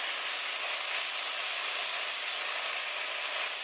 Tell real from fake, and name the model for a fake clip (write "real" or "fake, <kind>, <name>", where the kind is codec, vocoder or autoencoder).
real